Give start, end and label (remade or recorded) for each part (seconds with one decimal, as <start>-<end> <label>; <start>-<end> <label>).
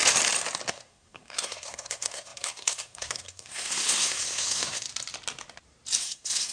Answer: 0.0-0.7 recorded; 0.7-4.9 remade; 4.9-6.0 recorded; 6.0-6.5 remade